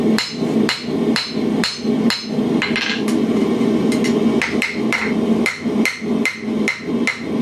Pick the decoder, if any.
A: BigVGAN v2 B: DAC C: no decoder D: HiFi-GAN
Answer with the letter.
C